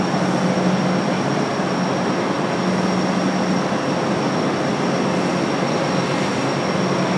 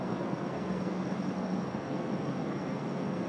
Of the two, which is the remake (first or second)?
second